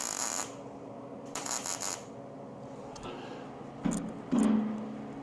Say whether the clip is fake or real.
real